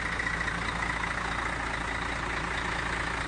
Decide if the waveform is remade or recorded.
recorded